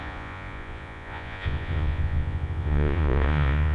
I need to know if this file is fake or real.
fake